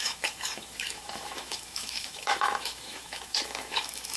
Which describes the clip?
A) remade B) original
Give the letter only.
A